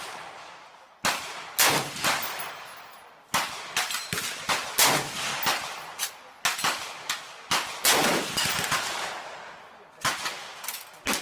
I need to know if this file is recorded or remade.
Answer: recorded